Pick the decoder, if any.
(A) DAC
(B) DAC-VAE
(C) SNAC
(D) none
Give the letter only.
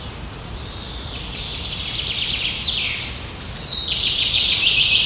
D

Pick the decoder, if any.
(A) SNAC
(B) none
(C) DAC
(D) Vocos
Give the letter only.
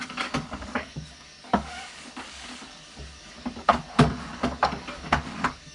C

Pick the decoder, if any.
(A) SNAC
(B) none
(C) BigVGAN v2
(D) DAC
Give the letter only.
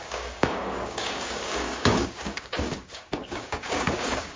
D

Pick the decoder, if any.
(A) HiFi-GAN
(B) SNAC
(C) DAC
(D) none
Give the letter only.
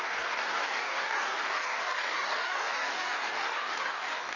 C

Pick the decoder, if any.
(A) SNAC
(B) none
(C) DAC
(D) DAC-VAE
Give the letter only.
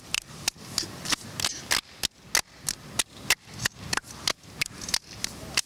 B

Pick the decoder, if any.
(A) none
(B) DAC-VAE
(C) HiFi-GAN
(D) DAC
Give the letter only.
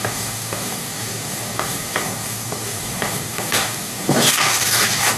D